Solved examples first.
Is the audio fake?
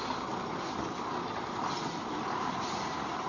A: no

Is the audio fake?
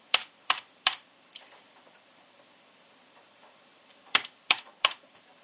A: yes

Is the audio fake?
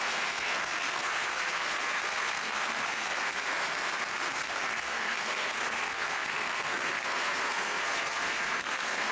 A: yes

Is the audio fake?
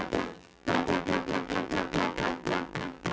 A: yes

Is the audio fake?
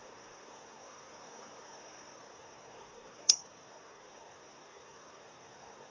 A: yes